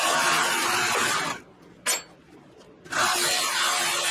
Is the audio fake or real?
real